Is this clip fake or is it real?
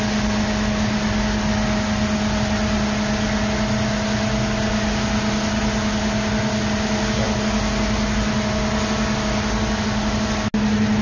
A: real